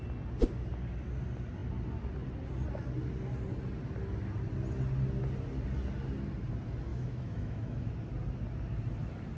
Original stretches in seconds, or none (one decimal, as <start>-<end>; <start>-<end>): 0.0-6.9; 7.9-9.4